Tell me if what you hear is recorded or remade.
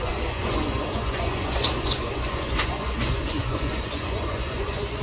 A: remade